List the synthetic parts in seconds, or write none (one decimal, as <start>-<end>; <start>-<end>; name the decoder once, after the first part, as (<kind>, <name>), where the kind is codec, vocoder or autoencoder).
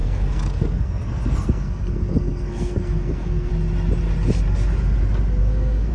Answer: 0.0-3.5 (codec, SNAC); 5.4-5.9